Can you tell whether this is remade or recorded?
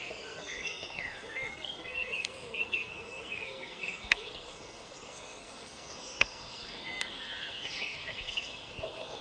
remade